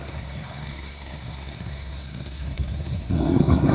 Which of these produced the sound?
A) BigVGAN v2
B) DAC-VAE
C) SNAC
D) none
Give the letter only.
C